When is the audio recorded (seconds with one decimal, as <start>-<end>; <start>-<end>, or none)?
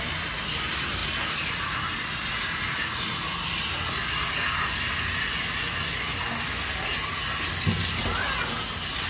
0.0-9.1